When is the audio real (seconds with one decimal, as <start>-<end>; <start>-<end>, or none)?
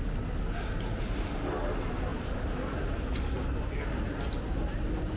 0.0-5.2